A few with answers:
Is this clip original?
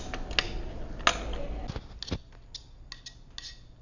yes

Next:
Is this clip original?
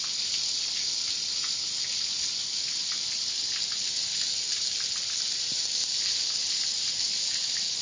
yes